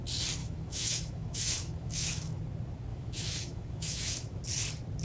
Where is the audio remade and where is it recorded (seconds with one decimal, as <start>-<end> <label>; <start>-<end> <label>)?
0.0-0.4 recorded; 0.4-2.4 remade; 2.4-2.9 recorded; 2.9-4.4 remade; 4.4-5.0 recorded